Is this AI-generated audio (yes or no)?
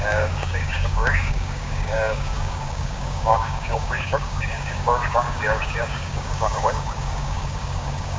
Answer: yes